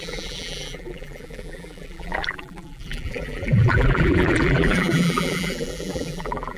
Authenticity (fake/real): fake